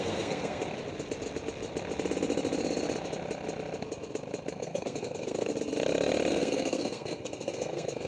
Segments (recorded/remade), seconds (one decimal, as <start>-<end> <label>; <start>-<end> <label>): 0.0-0.6 remade; 0.6-4.5 recorded; 4.5-5.5 remade; 5.5-6.3 recorded; 6.3-8.1 remade